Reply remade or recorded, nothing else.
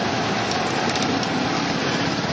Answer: recorded